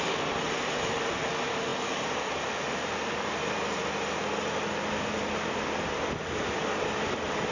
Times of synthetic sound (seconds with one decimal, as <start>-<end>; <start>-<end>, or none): none